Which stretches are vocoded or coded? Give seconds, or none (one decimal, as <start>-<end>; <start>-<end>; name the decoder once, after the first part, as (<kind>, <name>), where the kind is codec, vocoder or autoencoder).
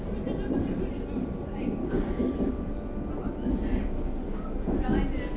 1.8-2.3 (codec, DAC)